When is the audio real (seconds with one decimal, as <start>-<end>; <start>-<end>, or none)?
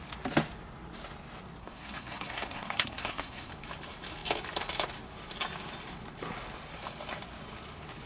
0.0-1.6; 3.5-8.1